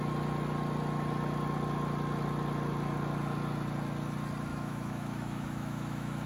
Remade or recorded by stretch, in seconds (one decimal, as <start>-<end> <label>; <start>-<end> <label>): 0.0-4.5 recorded; 4.5-6.3 remade